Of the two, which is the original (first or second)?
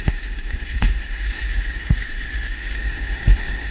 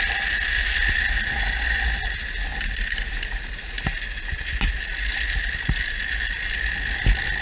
second